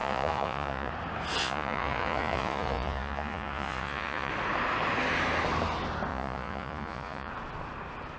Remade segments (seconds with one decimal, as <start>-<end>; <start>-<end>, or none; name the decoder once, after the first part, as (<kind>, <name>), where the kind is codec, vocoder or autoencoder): 0.0-0.9 (vocoder, Vocos); 1.4-4.3; 6.1-7.3